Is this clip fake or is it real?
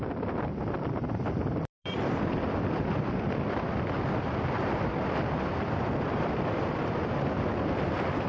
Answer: fake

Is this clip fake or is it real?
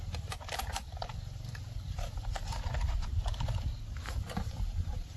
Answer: fake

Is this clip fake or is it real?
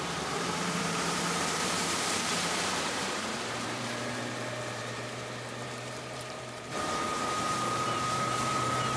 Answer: fake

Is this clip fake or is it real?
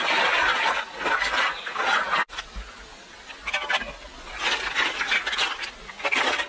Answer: real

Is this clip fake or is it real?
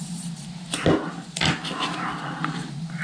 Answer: real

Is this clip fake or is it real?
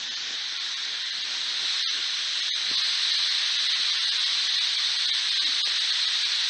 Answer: real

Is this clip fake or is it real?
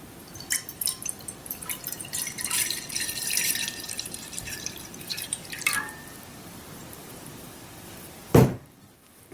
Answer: fake